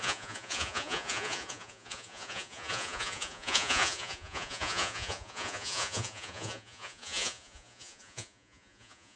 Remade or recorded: remade